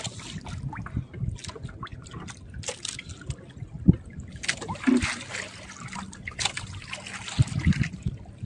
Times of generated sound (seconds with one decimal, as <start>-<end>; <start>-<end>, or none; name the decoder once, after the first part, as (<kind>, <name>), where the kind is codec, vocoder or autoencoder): none